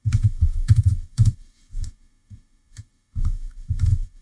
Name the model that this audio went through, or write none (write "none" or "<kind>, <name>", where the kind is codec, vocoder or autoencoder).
autoencoder, DAC-VAE